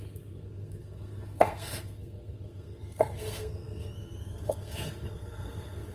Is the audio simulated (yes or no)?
yes